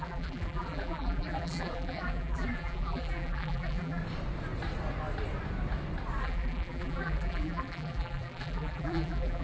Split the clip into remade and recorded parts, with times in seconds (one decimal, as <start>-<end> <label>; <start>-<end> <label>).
0.0-4.0 remade; 4.0-6.2 recorded; 6.2-9.4 remade